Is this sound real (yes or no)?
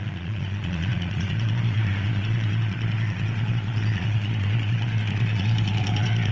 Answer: no